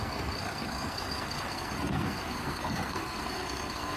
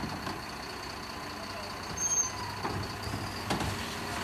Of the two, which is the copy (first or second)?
first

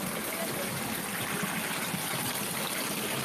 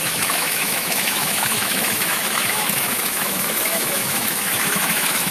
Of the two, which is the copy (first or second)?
second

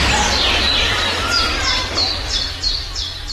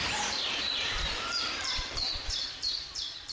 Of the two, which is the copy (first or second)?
second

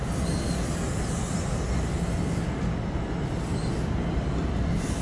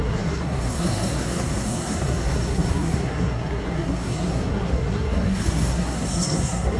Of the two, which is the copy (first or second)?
second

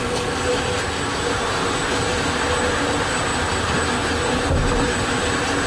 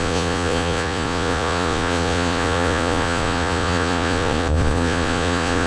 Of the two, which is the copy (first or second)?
second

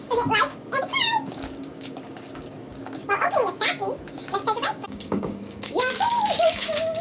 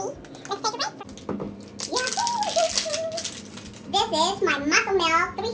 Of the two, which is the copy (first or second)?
first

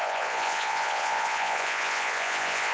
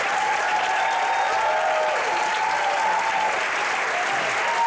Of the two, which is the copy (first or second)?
first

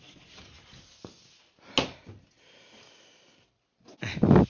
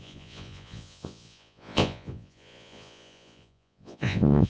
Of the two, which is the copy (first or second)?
second